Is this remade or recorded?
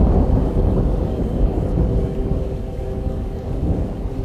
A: remade